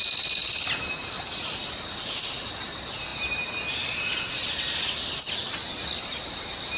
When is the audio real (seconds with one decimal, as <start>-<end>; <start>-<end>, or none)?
0.0-6.8